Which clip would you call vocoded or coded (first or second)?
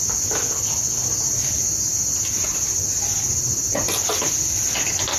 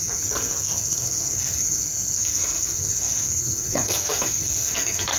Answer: second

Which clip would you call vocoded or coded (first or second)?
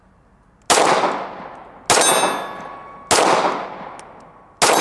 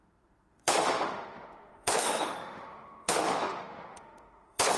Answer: second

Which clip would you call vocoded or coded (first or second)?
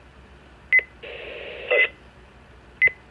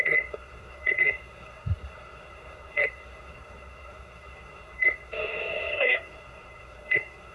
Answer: second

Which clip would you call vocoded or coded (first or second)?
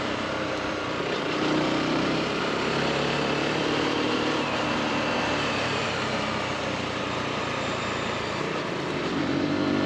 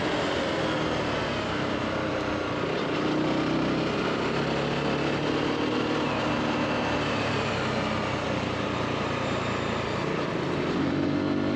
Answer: first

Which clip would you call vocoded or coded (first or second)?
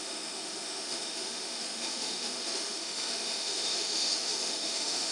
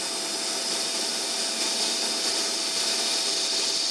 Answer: first